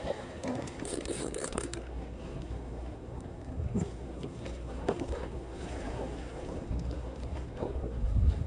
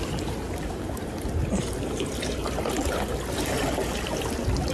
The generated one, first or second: first